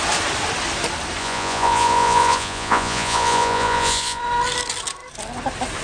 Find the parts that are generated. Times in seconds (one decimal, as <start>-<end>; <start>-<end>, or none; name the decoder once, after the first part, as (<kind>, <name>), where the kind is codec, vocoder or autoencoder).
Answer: 1.2-4.2 (vocoder, Vocos)